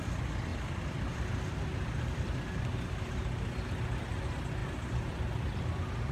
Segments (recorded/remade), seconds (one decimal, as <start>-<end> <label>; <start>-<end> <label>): 0.0-0.5 recorded; 0.5-2.6 remade; 2.6-6.1 recorded